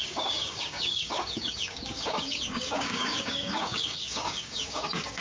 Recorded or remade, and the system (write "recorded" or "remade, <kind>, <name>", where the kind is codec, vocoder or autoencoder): remade, codec, DAC